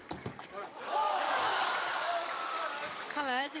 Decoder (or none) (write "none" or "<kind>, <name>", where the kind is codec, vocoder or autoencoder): codec, DAC